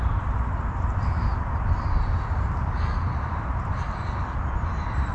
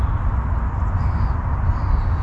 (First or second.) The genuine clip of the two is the second